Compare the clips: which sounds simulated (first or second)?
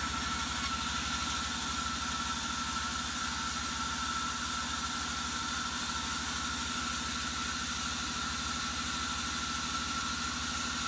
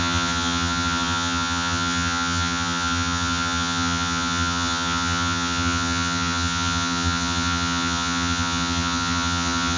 second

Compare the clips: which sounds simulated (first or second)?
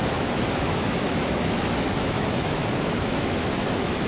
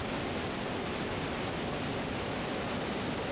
first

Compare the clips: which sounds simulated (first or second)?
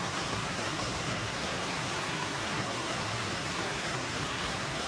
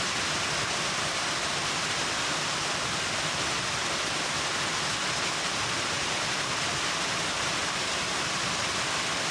first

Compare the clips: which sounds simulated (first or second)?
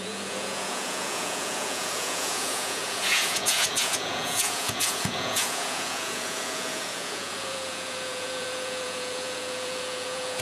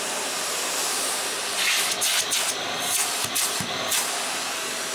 first